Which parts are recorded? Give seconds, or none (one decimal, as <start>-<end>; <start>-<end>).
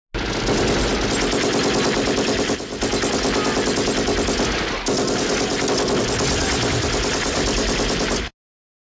0.0-9.0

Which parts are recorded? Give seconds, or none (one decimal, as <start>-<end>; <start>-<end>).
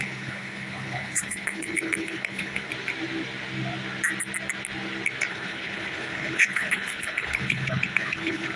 2.7-5.3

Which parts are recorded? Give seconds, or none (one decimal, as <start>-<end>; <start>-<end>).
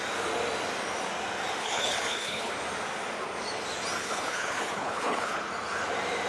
0.0-1.6; 2.5-4.0; 5.5-6.3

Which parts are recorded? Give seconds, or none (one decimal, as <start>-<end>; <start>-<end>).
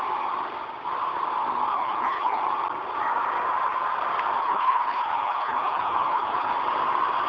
0.0-1.7; 2.4-4.4; 6.5-7.3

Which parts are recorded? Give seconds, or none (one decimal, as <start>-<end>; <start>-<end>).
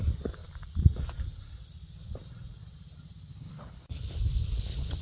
0.0-3.3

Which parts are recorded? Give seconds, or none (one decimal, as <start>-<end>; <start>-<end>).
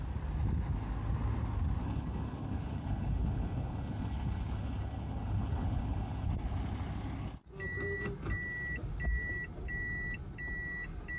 0.0-1.8; 6.3-11.2